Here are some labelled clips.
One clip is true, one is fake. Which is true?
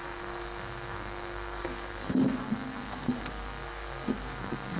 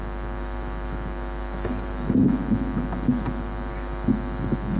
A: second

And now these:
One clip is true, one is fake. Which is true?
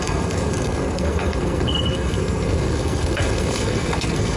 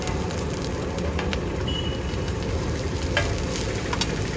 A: second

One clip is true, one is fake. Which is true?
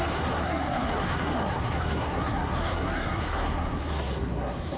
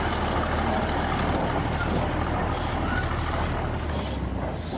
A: second